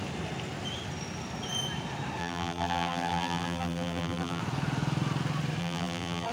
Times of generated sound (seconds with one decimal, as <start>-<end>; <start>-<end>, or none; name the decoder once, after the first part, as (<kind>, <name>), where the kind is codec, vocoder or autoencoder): 2.2-4.4 (vocoder, BigVGAN v2); 5.6-6.3